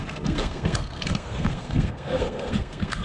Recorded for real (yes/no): no